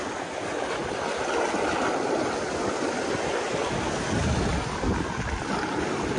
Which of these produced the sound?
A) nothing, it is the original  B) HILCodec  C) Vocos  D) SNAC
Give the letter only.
A